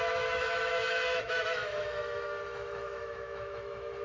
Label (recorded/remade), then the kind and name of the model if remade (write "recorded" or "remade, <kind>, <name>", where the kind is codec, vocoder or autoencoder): remade, autoencoder, DAC-VAE